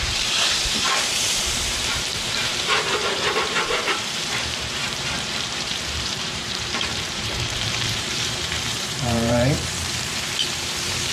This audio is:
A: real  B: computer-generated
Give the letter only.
B